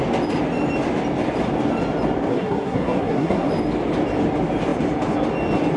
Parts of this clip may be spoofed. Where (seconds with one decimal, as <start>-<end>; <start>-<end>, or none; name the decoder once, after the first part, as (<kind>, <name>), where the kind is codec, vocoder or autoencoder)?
2.3-3.5 (codec, SNAC)

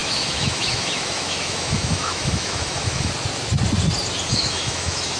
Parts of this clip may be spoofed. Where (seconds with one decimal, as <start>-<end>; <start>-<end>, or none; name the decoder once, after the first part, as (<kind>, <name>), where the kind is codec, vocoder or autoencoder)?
0.0-3.1 (autoencoder, DAC-VAE); 4.3-5.2

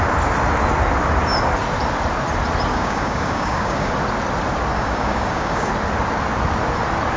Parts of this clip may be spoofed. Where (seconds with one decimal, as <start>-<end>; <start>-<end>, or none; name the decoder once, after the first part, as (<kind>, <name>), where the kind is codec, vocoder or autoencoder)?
2.7-3.9 (codec, DAC); 4.7-5.7

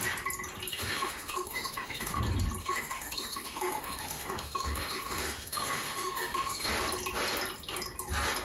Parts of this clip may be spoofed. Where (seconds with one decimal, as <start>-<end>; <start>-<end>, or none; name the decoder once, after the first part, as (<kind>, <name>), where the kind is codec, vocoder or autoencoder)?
0.7-2.2 (autoencoder, DAC-VAE); 2.6-6.7

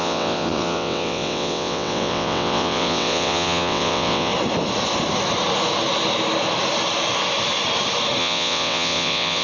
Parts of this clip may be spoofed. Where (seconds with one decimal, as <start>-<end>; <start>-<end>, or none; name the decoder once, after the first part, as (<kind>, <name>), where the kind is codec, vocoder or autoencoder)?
0.0-4.3 (vocoder, WaveNeXt); 8.2-9.4

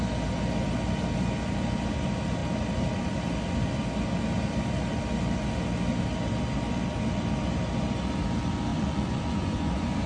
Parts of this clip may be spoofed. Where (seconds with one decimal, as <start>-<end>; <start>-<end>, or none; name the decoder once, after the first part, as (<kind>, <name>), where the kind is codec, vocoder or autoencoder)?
8.7-10.1 (vocoder, Vocos)

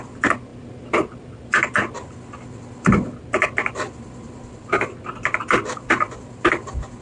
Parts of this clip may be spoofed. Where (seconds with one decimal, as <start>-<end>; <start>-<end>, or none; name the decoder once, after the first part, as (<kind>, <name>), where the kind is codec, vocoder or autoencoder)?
none